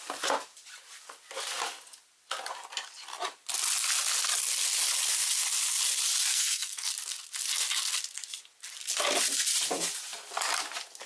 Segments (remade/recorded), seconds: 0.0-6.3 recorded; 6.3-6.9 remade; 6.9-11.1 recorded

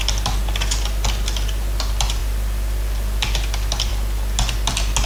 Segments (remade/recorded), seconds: 0.0-5.1 recorded

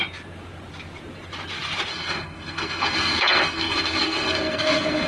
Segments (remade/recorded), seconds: 0.0-1.9 recorded; 1.9-5.1 remade

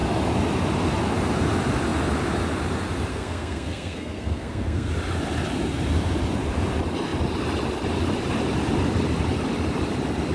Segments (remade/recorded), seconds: 0.0-3.1 recorded; 3.1-4.9 remade; 4.9-10.3 recorded

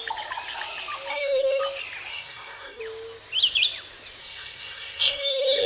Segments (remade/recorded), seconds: 0.0-1.1 recorded; 1.1-1.6 remade; 1.6-2.1 recorded; 2.1-2.8 remade; 2.8-4.2 recorded; 4.2-5.7 remade

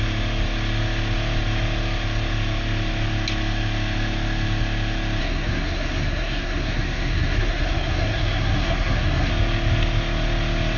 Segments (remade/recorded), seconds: 0.0-5.2 recorded; 5.2-9.3 remade; 9.3-10.8 recorded